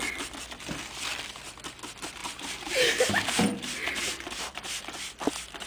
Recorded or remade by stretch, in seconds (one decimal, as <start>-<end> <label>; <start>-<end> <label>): 0.0-2.2 recorded; 2.2-4.8 remade; 4.8-5.7 recorded